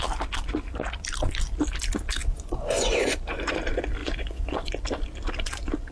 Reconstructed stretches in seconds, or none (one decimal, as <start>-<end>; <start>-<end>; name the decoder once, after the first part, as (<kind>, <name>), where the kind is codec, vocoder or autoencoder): 2.2-3.5 (vocoder, Vocos); 4.0-4.7